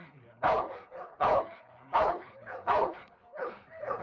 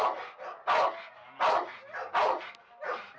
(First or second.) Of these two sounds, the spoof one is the first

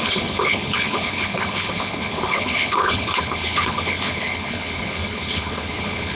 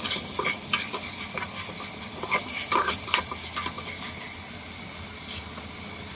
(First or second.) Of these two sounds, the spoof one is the first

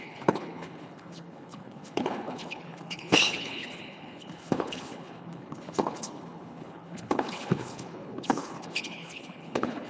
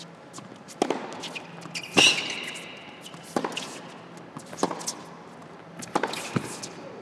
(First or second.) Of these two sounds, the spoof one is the first